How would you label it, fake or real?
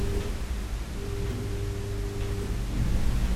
real